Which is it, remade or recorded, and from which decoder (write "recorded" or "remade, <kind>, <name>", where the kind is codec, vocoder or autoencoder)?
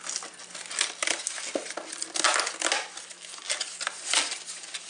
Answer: recorded